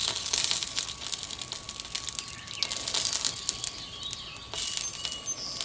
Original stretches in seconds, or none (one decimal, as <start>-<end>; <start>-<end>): 0.0-5.6